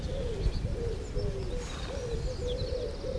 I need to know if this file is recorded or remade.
recorded